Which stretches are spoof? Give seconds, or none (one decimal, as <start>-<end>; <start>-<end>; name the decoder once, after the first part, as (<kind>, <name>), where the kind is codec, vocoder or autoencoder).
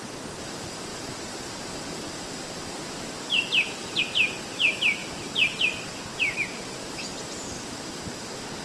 5.0-7.7 (vocoder, BigVGAN v2)